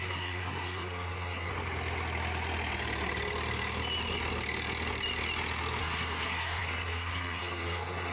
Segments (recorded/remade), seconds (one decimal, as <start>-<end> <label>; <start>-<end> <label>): 0.0-1.5 remade; 1.5-5.8 recorded; 5.8-8.1 remade